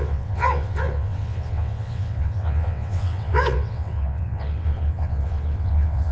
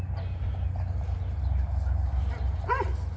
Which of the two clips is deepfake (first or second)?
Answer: first